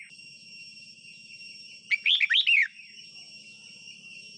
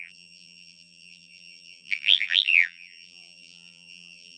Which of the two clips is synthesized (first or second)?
second